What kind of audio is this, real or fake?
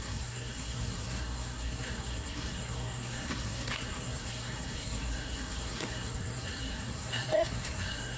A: fake